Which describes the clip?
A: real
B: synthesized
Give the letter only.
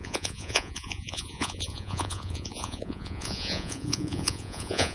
B